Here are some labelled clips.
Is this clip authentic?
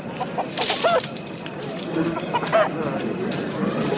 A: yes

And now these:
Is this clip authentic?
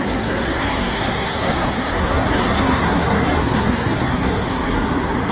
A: no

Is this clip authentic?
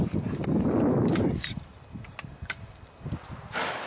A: yes